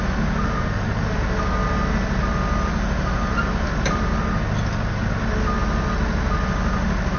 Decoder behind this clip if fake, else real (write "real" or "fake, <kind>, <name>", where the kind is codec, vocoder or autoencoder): real